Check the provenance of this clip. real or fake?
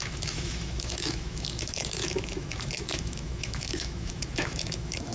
fake